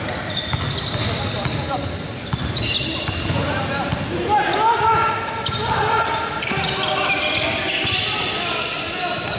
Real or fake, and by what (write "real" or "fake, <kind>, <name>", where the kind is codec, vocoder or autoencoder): real